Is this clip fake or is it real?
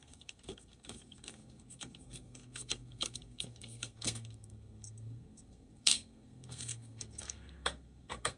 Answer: fake